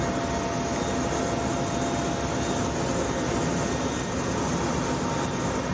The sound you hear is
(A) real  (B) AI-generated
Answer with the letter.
A